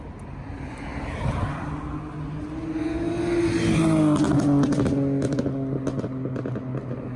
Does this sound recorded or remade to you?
recorded